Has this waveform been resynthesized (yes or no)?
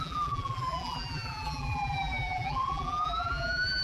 yes